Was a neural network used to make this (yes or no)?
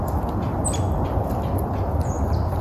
no